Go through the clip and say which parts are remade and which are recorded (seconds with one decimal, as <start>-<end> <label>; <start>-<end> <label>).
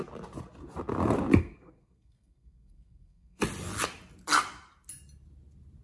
0.0-1.4 recorded; 1.4-3.4 remade; 3.4-5.8 recorded